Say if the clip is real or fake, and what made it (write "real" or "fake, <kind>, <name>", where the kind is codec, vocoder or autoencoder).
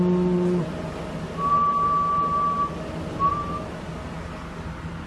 real